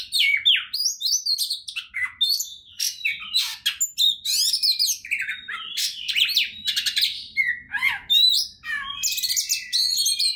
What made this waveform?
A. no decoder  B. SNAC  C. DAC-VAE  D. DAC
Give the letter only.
A